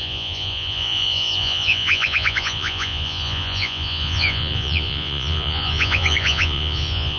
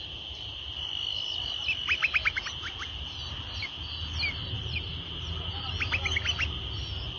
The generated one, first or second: first